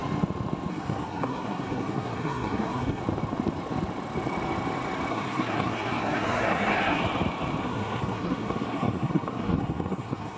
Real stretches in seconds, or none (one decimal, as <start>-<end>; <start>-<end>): 0.0-0.7; 3.0-5.1; 7.0-7.6